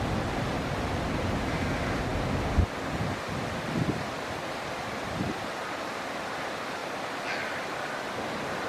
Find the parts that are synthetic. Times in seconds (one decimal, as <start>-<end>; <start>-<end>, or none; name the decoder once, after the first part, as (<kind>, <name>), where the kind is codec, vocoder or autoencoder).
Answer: none